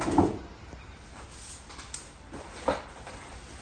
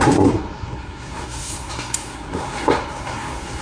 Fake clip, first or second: second